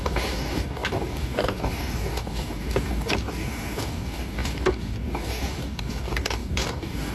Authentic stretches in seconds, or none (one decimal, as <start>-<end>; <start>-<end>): none